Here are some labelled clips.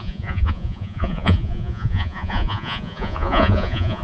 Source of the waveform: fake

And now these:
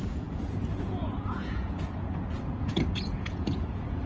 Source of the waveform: fake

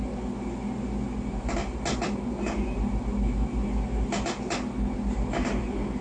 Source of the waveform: real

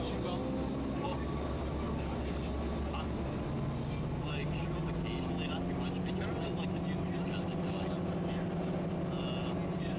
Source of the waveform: real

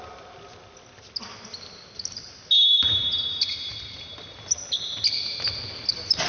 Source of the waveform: real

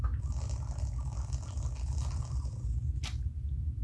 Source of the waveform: real